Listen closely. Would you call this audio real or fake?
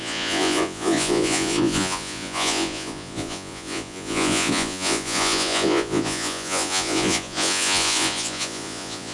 fake